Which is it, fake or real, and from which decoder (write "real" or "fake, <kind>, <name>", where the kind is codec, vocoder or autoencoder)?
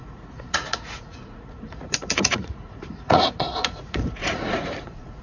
fake, vocoder, Vocos